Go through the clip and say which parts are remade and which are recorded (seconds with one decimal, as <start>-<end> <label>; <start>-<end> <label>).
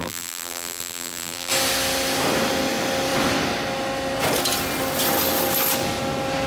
0.0-1.5 remade; 1.5-6.5 recorded